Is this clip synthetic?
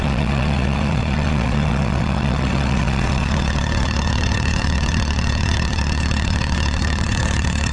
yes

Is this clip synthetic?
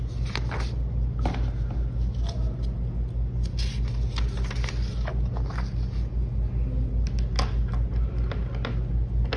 no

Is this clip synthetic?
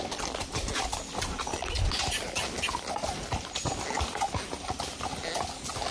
no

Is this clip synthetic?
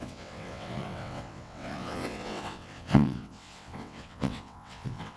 yes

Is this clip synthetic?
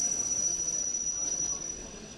yes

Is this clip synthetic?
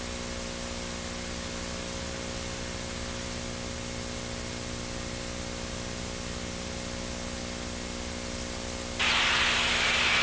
no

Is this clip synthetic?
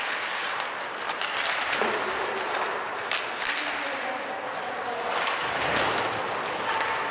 no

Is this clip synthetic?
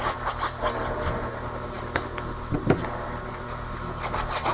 no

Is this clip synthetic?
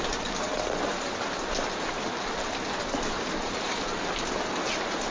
no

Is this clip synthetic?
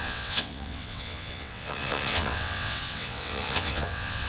yes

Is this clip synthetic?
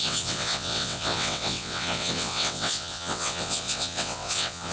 yes